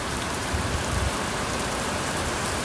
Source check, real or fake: fake